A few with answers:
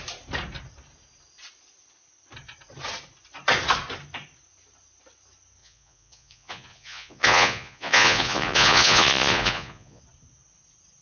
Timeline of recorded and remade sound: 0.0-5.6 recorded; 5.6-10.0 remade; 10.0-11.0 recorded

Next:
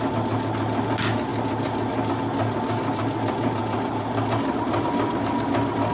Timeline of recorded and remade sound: 0.0-5.9 recorded

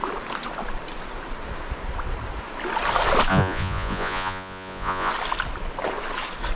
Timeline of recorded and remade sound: 0.0-3.3 recorded; 3.3-5.1 remade; 5.1-6.6 recorded

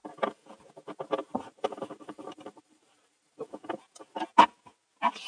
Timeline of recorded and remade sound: 0.0-1.2 recorded; 1.2-3.3 remade; 3.3-5.3 recorded

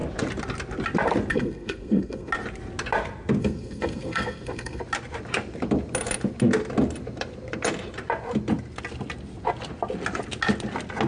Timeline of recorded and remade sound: 0.0-1.3 recorded; 1.3-2.3 remade; 2.3-3.4 recorded; 3.4-4.8 remade; 4.8-11.1 recorded

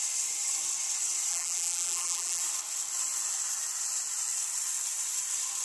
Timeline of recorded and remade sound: 0.0-1.3 recorded; 1.3-2.4 remade; 2.4-5.6 recorded